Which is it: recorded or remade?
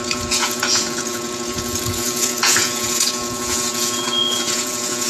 remade